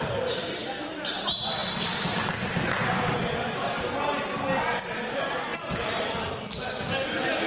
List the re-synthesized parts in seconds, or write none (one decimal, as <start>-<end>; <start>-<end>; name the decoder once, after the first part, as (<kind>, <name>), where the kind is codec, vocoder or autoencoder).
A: none

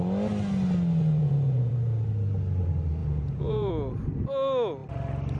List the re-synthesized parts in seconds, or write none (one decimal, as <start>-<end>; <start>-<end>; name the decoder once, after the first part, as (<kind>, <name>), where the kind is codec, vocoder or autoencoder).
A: 1.2-1.7 (vocoder, Vocos); 3.0-3.7

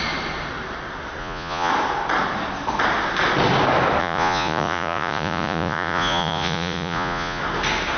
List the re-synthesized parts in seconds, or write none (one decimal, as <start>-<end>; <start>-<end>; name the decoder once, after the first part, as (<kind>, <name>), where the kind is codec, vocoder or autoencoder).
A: 1.2-1.7 (vocoder, Vocos); 4.0-7.4

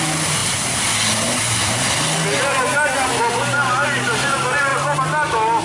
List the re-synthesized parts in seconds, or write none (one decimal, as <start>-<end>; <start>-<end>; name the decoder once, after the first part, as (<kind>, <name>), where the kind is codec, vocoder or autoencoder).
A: none

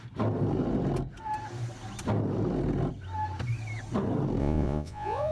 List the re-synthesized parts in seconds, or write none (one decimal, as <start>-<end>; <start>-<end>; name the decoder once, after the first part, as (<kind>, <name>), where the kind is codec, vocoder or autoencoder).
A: 4.4-5.3 (vocoder, Vocos)